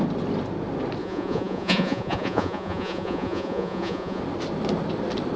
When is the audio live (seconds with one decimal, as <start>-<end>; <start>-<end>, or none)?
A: 0.0-1.0; 4.2-5.4